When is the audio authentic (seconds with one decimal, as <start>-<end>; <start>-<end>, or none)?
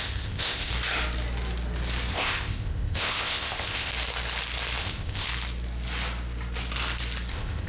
0.7-2.1; 3.9-4.8; 5.3-7.3